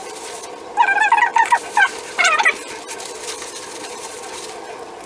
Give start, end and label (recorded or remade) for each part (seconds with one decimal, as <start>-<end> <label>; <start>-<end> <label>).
0.0-0.6 remade; 0.6-1.3 recorded; 1.3-4.4 remade; 4.4-5.1 recorded